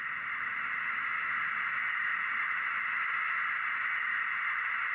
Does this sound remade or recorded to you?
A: recorded